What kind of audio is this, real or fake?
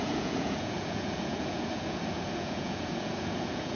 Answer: fake